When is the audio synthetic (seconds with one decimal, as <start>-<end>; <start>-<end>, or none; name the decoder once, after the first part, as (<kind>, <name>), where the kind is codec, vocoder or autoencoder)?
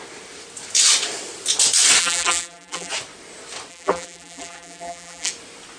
2.0-2.9 (vocoder, BigVGAN v2); 3.7-5.3